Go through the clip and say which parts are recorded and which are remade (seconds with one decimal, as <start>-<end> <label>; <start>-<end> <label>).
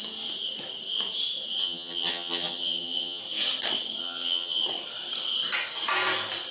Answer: 0.0-1.6 recorded; 1.6-3.2 remade; 3.2-4.0 recorded; 4.0-4.6 remade; 4.6-6.5 recorded